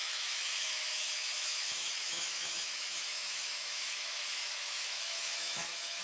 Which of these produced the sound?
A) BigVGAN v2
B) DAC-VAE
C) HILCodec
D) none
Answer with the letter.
B